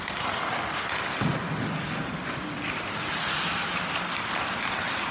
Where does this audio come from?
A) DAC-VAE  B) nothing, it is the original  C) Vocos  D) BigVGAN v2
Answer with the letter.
B